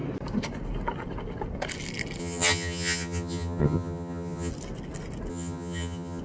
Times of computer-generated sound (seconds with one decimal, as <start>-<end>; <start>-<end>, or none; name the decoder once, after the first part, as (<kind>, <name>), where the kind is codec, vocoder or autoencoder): 2.2-4.5 (vocoder, HiFi-GAN); 5.3-6.2